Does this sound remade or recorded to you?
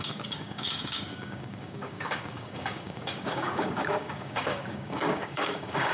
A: remade